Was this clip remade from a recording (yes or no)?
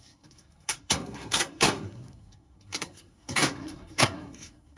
yes